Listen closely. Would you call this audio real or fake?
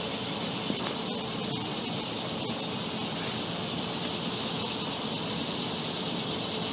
real